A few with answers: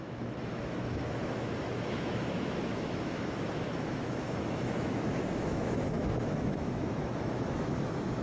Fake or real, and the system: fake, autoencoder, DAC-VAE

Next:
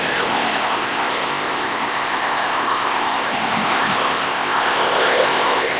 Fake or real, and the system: fake, codec, ZipCodec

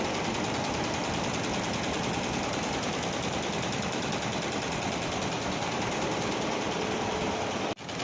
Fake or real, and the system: real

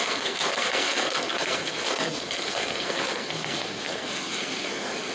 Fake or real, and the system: fake, codec, SNAC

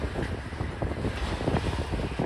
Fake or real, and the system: real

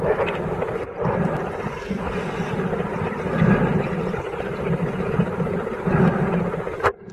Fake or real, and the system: real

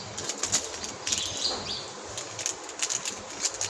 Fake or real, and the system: real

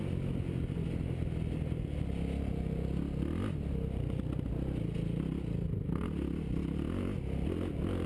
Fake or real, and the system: real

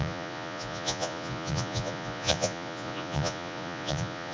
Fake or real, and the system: fake, vocoder, Vocos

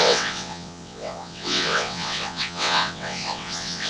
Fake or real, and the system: fake, vocoder, WaveNeXt